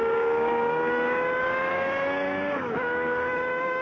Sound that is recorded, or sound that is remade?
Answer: remade